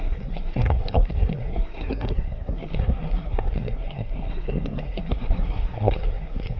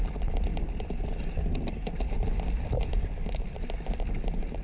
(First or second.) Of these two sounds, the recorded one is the second